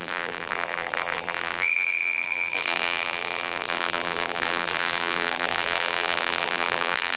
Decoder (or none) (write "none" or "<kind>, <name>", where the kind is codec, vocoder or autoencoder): vocoder, BigVGAN v2